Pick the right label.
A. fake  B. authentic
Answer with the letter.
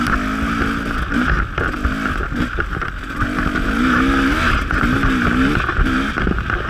B